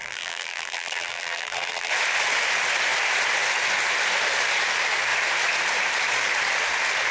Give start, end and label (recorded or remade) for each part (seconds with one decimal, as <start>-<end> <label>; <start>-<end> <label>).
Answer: 0.0-1.9 remade; 1.9-7.1 recorded